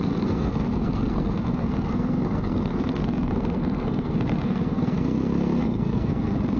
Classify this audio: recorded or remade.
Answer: remade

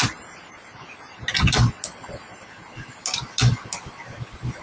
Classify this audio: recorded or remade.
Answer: recorded